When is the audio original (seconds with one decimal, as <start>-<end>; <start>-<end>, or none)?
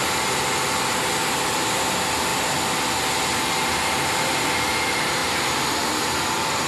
0.0-6.7